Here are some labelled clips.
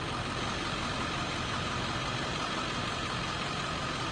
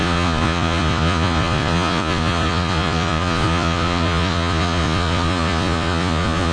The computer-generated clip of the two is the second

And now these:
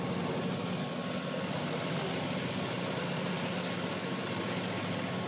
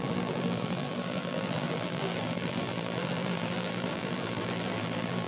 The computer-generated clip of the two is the second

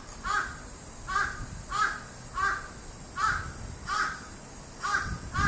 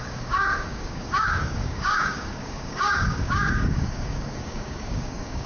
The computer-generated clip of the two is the second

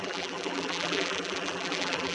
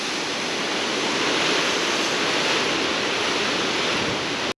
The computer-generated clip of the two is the first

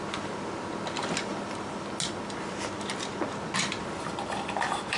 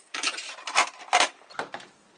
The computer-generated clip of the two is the second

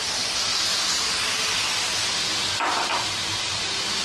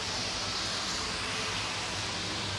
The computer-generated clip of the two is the first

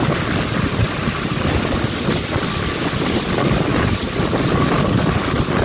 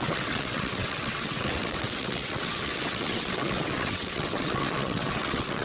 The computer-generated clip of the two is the second